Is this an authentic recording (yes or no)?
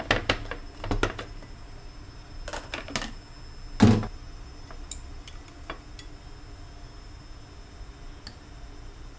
yes